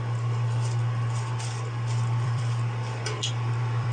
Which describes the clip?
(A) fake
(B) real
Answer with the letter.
A